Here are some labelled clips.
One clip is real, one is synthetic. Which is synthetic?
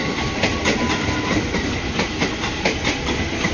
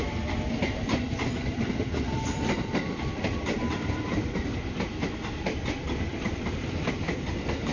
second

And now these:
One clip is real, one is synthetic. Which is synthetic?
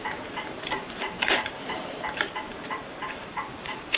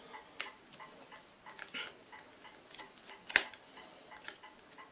first